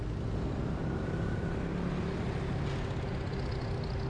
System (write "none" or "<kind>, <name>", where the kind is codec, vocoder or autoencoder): none